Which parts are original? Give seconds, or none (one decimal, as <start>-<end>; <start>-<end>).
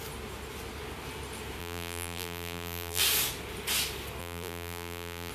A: 0.0-1.6; 3.0-4.2